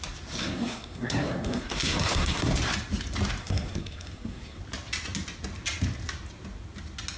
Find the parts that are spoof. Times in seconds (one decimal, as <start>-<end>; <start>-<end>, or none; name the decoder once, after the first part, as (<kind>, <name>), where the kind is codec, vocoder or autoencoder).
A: 0.4-2.5 (codec, SNAC); 3.4-4.6